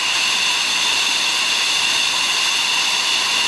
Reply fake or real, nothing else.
real